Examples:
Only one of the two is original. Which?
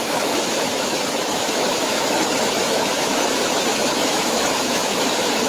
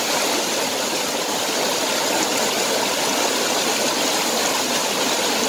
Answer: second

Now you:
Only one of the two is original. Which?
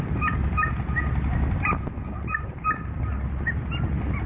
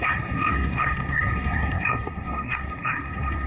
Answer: first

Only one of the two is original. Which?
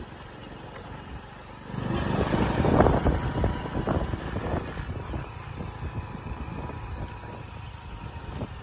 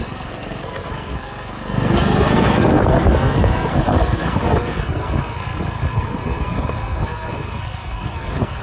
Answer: first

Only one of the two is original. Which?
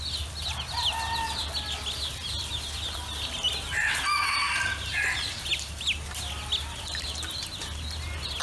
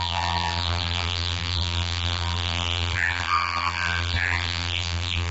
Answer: first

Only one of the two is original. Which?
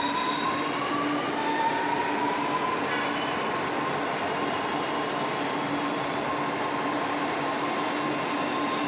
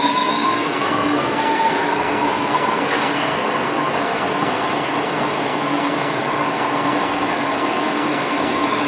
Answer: first